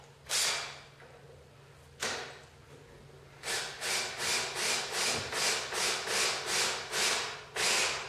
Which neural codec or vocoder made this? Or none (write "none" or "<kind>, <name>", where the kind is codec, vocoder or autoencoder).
none